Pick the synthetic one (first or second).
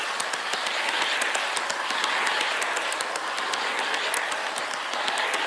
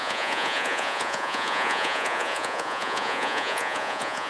second